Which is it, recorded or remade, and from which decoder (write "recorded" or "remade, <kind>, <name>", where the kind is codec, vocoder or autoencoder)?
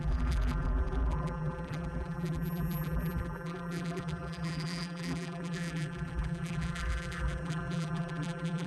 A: remade, vocoder, BigVGAN v2